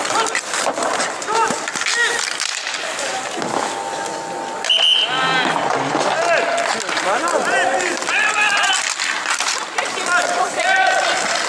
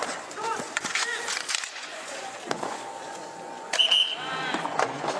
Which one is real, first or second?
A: first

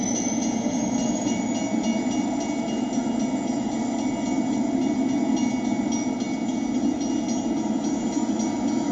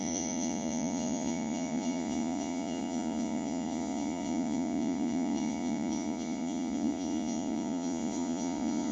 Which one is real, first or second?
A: first